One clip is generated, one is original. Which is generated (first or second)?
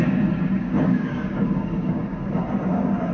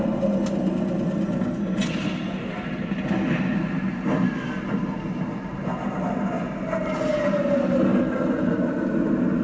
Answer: first